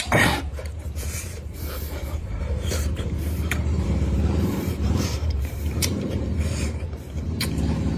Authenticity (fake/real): fake